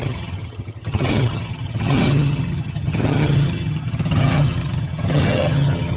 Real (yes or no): no